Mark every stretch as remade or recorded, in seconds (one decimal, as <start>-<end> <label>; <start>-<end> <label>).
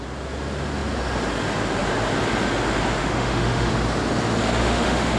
0.0-3.0 recorded; 3.0-3.7 remade; 3.7-4.6 recorded; 4.6-5.2 remade